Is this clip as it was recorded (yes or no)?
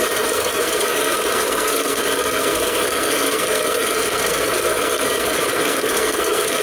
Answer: no